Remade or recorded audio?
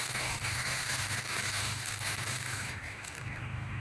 remade